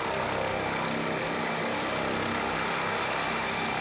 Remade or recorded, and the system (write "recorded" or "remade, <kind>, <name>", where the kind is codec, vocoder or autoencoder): recorded